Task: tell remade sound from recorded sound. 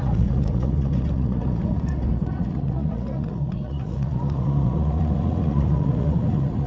remade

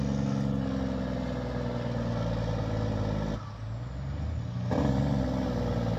recorded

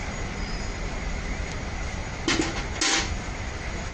recorded